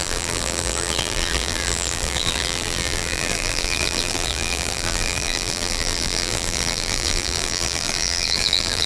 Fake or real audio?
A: fake